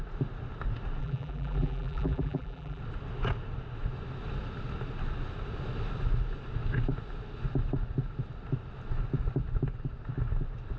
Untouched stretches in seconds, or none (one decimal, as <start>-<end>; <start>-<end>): 0.0-1.0; 2.8-10.8